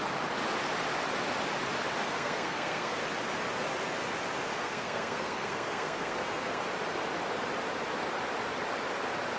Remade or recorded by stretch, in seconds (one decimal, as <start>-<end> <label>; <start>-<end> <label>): 0.0-2.0 recorded; 2.0-3.0 remade; 3.0-4.5 recorded; 4.5-6.6 remade; 6.6-9.4 recorded

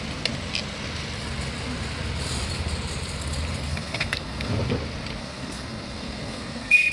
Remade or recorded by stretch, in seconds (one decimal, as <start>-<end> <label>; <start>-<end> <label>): 0.0-3.7 recorded; 3.7-4.5 remade; 4.5-5.2 recorded; 5.2-6.9 remade